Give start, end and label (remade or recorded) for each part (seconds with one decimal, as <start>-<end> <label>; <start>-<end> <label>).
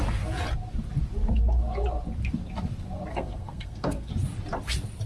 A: 0.0-3.1 recorded; 3.1-4.1 remade; 4.1-5.1 recorded